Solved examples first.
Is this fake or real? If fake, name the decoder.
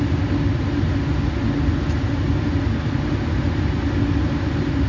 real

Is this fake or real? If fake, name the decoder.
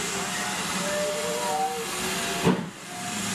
real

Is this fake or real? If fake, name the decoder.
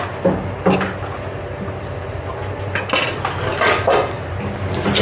real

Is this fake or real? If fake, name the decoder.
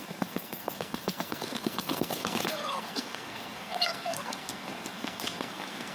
fake, codec, SNAC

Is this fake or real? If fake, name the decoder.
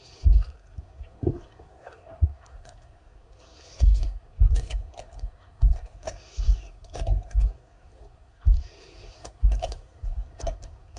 fake, codec, SNAC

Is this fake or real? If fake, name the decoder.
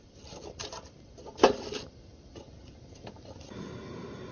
real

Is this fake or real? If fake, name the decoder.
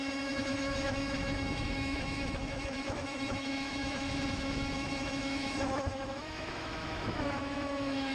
fake, autoencoder, DAC-VAE